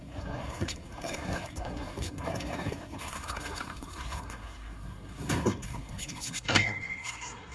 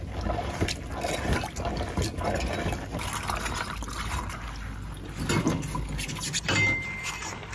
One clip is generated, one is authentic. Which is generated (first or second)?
first